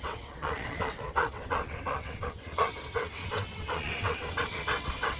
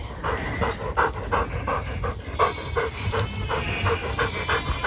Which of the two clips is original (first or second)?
second